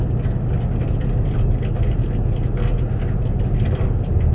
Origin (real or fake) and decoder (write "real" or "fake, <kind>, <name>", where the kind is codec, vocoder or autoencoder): real